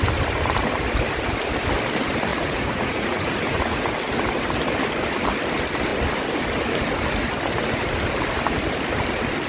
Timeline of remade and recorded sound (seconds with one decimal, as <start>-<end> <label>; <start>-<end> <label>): 0.0-2.3 recorded; 2.3-3.9 remade; 3.9-9.5 recorded